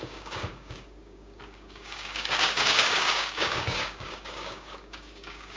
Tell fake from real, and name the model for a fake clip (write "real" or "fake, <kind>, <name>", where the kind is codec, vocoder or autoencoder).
fake, codec, DAC